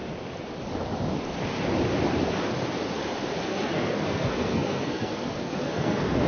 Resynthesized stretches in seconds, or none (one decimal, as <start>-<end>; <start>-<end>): 3.5-6.3